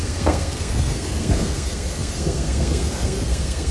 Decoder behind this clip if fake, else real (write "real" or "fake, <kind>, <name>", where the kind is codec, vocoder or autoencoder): fake, codec, SNAC